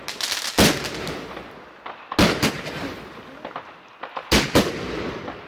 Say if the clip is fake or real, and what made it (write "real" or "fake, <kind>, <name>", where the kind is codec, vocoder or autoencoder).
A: real